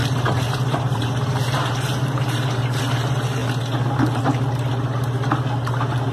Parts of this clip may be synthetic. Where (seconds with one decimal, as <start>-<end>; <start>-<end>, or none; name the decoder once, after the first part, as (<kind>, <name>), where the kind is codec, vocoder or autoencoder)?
0.0-2.8 (vocoder, BigVGAN v2)